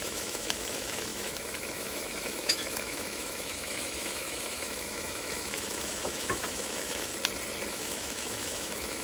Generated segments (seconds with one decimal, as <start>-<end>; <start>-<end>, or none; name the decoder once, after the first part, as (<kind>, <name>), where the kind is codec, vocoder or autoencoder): 0.0-7.1 (autoencoder, DAC-VAE); 7.7-9.0